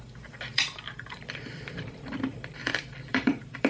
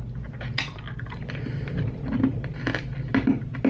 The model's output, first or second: first